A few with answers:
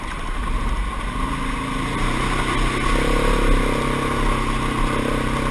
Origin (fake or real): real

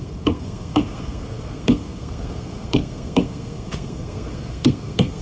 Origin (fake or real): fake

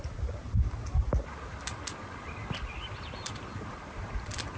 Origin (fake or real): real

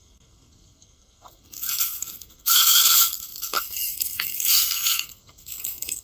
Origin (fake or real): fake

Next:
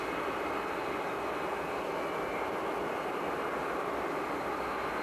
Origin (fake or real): real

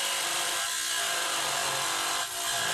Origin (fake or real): real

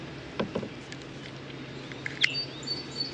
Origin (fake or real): real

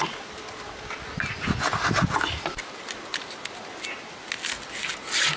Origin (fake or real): real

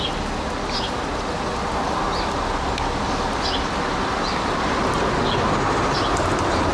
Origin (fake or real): real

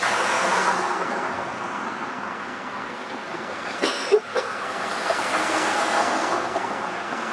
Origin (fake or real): fake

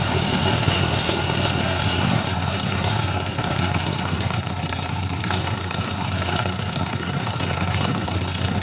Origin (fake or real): fake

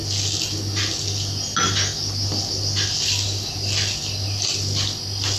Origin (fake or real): real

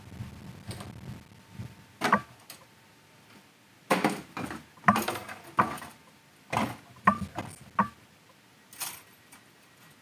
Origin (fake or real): real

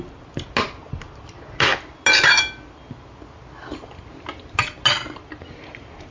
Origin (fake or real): real